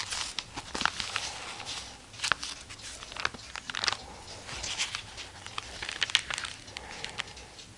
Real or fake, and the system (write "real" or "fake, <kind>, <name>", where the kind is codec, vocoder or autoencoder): real